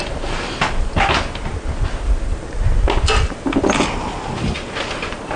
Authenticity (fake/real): real